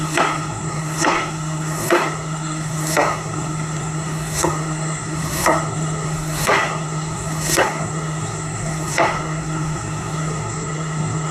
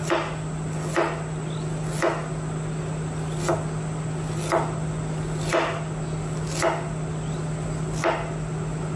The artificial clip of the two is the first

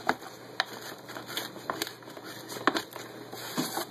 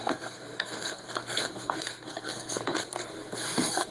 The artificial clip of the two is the second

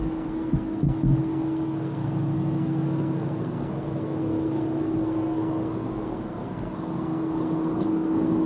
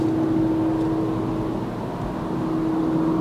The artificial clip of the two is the first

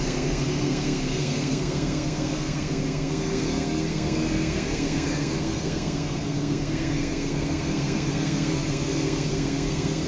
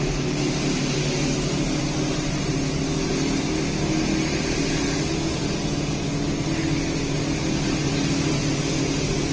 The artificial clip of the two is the first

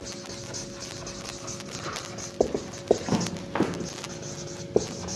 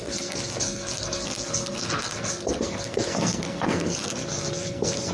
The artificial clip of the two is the second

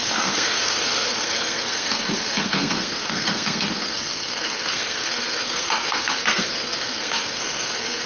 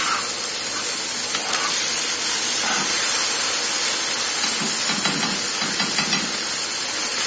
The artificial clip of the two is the first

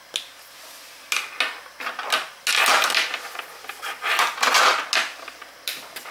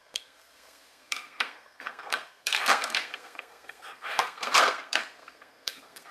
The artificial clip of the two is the second